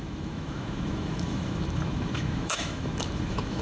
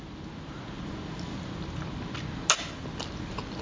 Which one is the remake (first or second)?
first